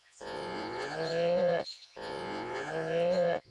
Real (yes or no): no